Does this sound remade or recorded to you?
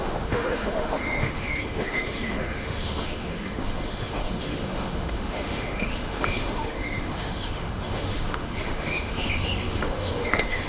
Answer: remade